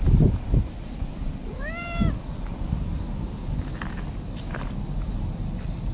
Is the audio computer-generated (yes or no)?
no